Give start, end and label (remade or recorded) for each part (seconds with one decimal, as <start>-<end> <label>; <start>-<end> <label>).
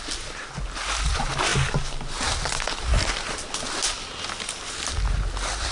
0.0-5.7 recorded